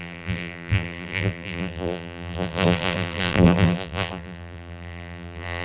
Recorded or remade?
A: remade